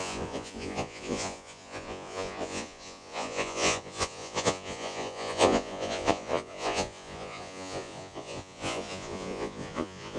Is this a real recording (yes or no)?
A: no